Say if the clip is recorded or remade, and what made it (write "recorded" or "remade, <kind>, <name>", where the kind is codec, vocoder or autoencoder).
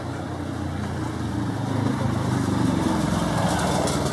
recorded